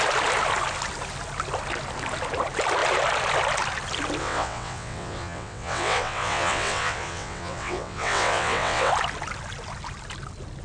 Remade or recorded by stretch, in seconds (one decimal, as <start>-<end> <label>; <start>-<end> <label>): 0.0-4.2 recorded; 4.2-8.9 remade; 8.9-10.6 recorded